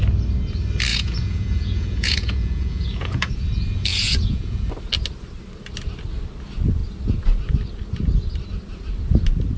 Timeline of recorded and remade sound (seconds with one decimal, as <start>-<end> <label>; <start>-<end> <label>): 0.0-0.9 recorded; 0.9-3.3 remade; 3.3-3.9 recorded; 3.9-4.7 remade; 4.7-9.6 recorded